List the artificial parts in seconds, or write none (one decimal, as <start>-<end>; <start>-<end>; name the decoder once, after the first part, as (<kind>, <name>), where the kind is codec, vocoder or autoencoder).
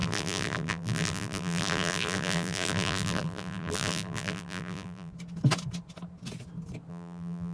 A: 0.0-5.1 (vocoder, BigVGAN v2); 6.9-7.5